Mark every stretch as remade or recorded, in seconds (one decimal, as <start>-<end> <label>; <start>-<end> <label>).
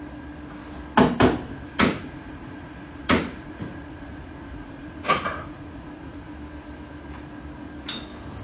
0.0-1.4 recorded; 1.4-6.3 remade; 6.3-8.4 recorded